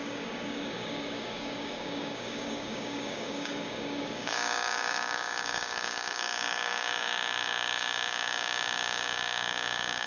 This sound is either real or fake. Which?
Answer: fake